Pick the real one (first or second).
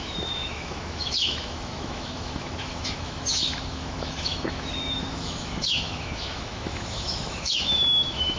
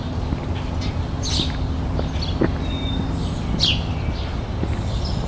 second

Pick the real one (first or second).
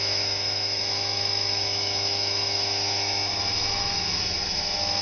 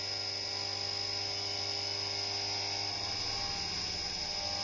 second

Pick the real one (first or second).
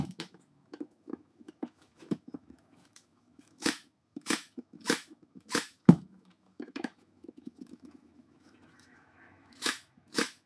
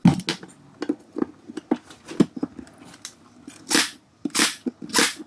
second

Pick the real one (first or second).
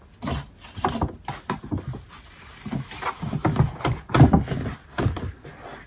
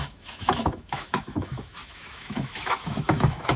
first